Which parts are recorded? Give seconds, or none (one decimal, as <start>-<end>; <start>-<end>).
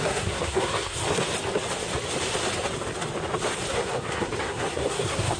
1.0-3.7